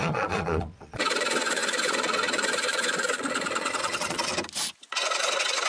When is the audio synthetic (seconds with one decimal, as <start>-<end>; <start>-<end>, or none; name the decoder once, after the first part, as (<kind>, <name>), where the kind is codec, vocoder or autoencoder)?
0.0-4.3 (vocoder, Vocos); 4.9-5.7